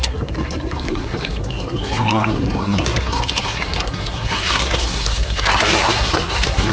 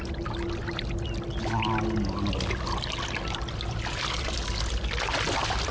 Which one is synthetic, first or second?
first